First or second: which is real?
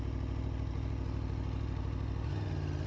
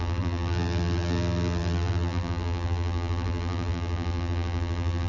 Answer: first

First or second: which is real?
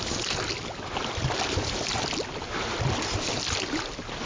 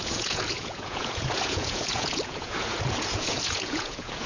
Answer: first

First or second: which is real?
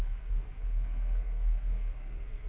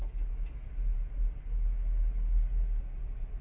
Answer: second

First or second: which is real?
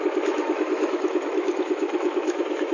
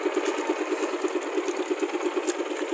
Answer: second